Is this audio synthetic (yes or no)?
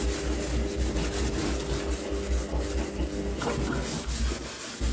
no